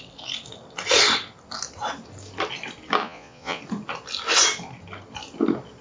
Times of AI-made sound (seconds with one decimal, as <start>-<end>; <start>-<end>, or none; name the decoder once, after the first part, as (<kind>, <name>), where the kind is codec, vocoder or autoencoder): 3.0-3.6 (vocoder, Vocos)